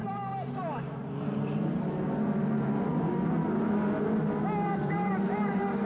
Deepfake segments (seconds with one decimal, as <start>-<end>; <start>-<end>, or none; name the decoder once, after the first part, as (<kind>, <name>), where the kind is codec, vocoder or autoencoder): none